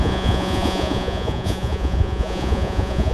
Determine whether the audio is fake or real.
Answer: fake